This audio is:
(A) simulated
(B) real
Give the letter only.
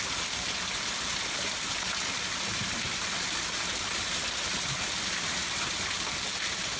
B